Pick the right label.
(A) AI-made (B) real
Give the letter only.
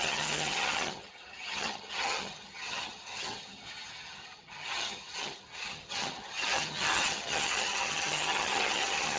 A